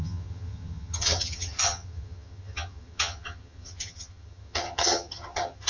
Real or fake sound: fake